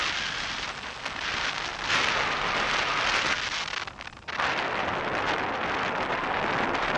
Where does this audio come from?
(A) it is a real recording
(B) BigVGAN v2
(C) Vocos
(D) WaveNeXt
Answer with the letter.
A